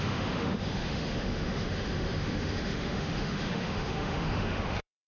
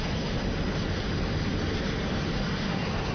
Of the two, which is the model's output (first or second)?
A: first